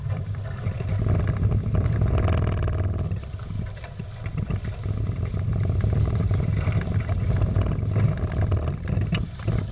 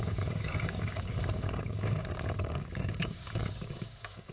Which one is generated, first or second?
second